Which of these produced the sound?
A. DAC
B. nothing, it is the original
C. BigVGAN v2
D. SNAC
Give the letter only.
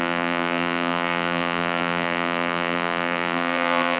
C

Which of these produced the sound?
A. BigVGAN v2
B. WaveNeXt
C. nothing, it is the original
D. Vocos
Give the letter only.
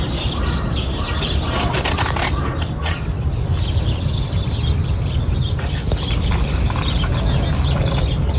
C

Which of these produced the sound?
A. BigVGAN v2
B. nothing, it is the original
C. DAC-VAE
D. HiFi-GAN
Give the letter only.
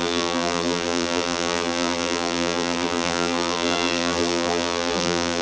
A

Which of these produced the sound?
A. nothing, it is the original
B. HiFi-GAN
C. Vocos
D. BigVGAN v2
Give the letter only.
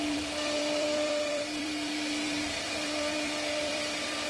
D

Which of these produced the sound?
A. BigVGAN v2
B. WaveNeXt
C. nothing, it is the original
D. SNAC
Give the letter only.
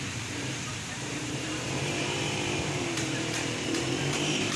A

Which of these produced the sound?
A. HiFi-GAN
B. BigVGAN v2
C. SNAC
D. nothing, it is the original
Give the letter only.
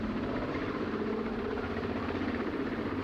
B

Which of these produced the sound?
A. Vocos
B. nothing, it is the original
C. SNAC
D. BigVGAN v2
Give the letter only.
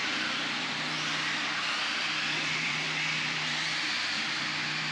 D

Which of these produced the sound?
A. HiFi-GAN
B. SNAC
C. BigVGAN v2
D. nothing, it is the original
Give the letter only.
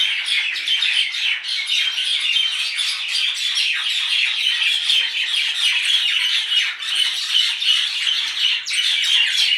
D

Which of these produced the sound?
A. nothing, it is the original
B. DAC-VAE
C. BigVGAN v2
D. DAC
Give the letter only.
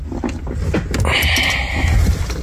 A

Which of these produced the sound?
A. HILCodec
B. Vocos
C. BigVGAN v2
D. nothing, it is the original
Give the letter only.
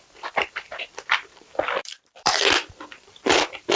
C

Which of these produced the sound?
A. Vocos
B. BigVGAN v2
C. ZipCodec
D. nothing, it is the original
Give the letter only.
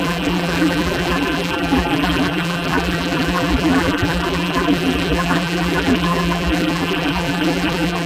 B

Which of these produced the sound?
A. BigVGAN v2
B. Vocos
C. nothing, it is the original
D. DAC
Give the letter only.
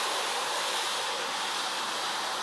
C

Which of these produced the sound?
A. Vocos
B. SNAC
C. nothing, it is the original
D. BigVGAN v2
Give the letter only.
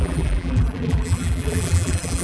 D